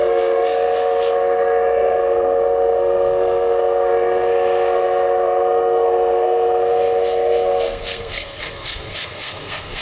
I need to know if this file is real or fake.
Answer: fake